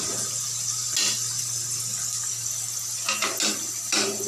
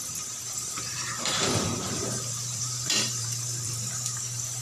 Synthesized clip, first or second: second